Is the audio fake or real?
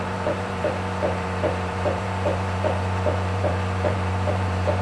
fake